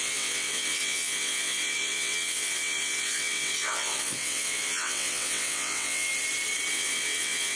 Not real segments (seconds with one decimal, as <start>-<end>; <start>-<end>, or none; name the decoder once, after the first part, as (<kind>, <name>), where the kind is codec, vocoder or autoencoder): 0.0-6.1 (vocoder, WaveNeXt); 6.7-7.6